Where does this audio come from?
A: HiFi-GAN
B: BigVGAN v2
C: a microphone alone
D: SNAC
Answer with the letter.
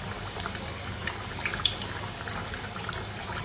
C